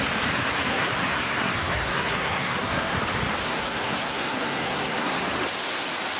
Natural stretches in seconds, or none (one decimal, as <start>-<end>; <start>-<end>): 0.0-0.7; 3.0-3.4; 5.2-6.2